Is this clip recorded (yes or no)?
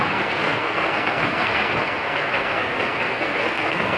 no